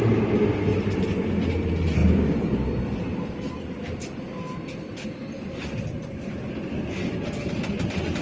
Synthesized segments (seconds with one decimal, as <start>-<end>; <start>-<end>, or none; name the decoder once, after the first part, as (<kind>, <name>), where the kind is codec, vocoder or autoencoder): 0.7-1.3 (vocoder, BigVGAN v2)